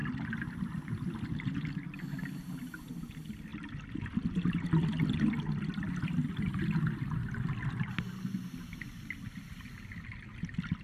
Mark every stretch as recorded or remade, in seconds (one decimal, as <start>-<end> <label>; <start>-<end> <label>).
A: 0.0-10.8 recorded